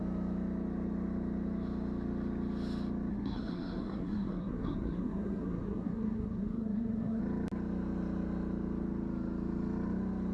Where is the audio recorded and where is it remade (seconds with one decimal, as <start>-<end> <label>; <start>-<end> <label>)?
0.0-3.1 recorded; 3.1-7.2 remade; 7.2-10.3 recorded